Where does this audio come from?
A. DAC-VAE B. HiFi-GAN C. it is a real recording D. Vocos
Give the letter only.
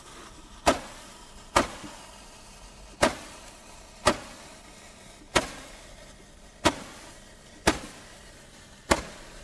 C